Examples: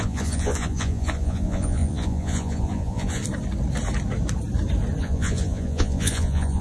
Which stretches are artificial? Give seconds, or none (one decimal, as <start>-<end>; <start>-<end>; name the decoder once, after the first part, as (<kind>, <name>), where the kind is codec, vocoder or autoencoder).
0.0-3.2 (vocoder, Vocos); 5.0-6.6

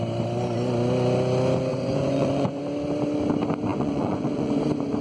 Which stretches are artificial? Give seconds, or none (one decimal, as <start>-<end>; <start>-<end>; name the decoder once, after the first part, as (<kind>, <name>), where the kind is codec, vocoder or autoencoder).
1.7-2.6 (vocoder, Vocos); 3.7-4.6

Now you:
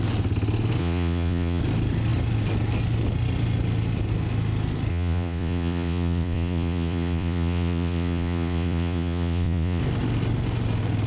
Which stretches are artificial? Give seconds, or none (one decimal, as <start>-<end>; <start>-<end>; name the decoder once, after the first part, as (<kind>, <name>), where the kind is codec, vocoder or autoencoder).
0.8-1.6 (vocoder, Vocos); 4.9-9.8

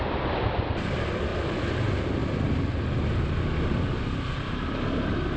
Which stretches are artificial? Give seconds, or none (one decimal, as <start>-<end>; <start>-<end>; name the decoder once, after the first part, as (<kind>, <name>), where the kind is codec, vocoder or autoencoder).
none

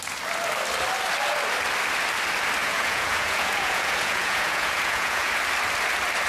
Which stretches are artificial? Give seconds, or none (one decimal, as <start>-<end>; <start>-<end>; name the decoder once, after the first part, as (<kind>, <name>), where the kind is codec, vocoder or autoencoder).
2.6-5.3 (vocoder, Vocos)

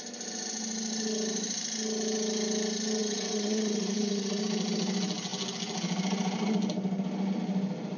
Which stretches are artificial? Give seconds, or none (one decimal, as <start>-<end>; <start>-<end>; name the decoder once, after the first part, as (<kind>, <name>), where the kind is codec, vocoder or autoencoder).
3.0-4.4 (vocoder, Vocos)

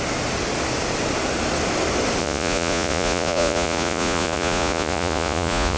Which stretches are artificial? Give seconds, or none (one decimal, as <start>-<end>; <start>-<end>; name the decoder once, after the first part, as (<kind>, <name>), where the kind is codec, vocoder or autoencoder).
2.2-5.8 (vocoder, Vocos)